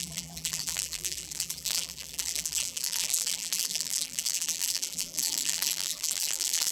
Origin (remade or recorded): remade